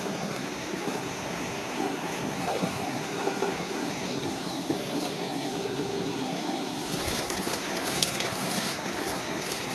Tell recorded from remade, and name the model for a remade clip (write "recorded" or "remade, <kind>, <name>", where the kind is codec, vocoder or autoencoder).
remade, codec, SNAC